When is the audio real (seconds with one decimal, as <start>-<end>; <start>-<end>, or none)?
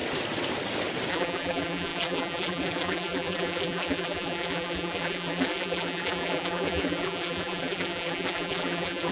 0.0-1.1